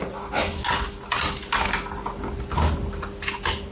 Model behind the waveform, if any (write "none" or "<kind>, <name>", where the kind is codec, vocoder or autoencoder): none